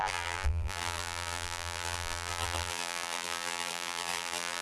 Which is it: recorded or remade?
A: remade